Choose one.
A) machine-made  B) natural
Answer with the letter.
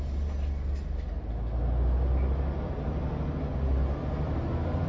B